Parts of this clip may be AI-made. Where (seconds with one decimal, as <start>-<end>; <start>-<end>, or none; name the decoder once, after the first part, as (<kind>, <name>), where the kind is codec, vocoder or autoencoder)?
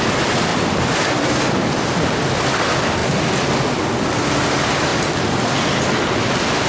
0.5-1.5 (vocoder, BigVGAN v2)